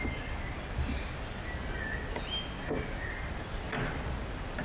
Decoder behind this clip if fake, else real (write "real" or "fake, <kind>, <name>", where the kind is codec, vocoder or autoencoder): real